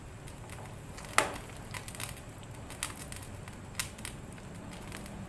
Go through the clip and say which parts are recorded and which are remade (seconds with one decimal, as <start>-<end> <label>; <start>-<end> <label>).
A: 0.0-5.3 recorded